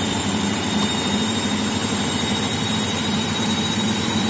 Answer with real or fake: fake